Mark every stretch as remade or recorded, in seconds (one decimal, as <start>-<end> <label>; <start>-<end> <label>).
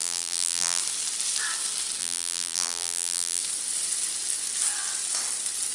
0.0-0.8 remade; 0.8-2.0 recorded; 2.0-3.4 remade; 3.4-5.7 recorded